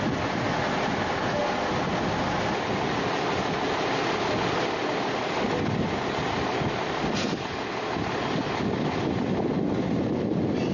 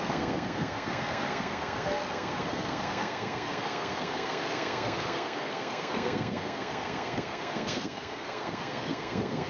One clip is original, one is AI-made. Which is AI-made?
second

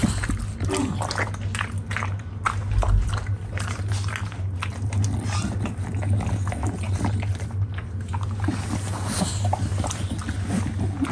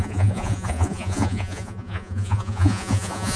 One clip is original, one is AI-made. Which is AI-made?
second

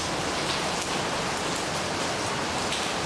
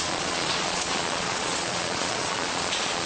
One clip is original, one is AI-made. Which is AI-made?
second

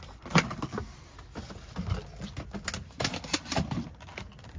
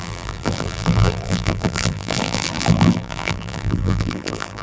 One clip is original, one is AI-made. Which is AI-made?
second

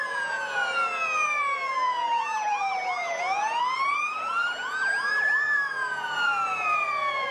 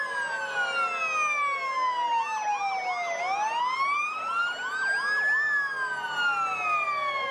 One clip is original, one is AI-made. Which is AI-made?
first